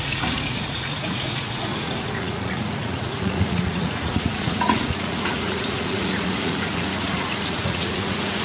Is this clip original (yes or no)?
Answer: no